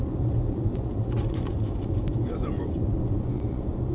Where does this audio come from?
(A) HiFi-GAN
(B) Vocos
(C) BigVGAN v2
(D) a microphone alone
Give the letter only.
B